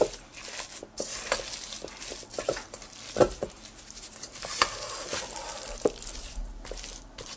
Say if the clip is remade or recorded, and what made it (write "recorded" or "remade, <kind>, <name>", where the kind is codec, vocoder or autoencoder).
recorded